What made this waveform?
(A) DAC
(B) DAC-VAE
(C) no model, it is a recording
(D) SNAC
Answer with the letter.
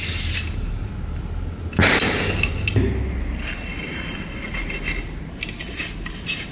C